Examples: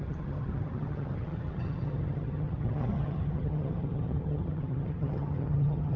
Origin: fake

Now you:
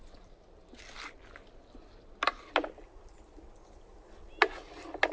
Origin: real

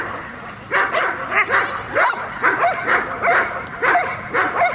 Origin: real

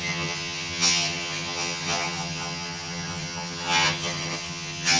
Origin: fake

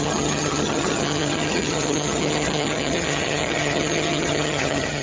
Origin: fake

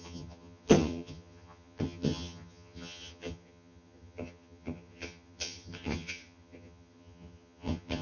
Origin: fake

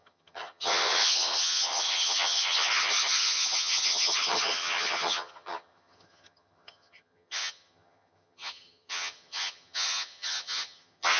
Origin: fake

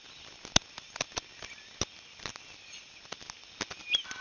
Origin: real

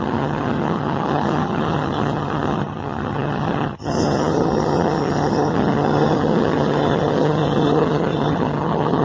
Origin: fake